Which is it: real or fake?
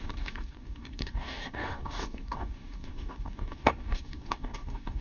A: fake